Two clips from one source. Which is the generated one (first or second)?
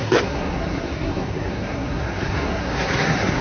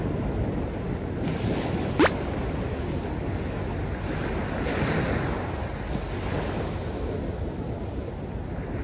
first